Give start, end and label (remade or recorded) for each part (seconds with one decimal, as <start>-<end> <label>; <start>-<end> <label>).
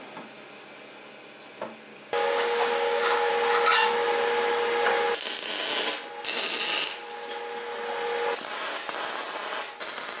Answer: 0.0-1.9 recorded; 1.9-3.3 remade; 3.3-10.2 recorded